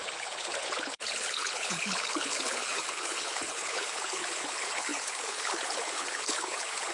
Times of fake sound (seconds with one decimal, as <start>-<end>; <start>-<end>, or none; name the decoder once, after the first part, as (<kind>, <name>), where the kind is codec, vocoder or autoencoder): 0.0-6.9 (codec, HILCodec)